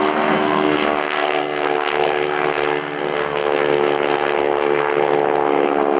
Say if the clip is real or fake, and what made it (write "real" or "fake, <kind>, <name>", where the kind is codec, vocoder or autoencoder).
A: fake, codec, SNAC